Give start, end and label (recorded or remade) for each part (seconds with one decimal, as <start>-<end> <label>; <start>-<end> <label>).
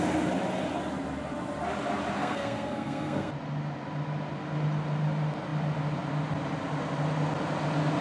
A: 0.0-2.2 recorded; 2.2-3.3 remade; 3.3-8.0 recorded